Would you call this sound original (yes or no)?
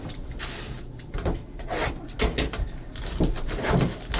yes